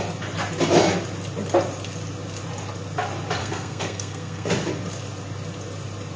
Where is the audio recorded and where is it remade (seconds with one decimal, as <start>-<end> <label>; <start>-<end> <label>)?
0.0-3.4 recorded; 3.4-4.5 remade; 4.5-6.2 recorded